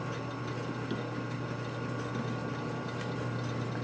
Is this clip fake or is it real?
real